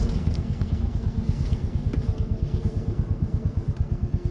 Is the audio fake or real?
fake